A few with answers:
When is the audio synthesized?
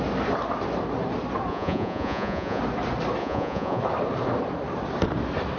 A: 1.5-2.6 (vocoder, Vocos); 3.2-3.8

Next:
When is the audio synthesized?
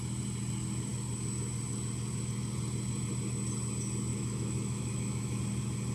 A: 4.1-5.4 (autoencoder, DAC-VAE)